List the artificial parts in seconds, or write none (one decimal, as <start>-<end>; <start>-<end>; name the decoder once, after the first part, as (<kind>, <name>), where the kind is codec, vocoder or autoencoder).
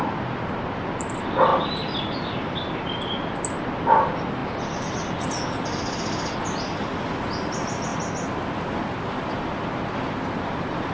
none